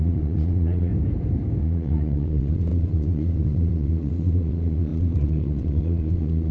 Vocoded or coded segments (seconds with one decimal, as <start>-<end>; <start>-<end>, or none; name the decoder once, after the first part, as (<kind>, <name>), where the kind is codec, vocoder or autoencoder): 0.0-0.9 (vocoder, Vocos); 1.6-6.5